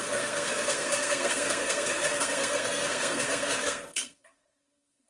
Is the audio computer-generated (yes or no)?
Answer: yes